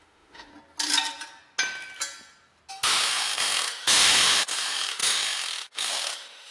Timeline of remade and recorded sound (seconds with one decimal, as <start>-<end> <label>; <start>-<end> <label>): 0.0-0.5 remade; 0.5-2.7 recorded; 2.7-6.5 remade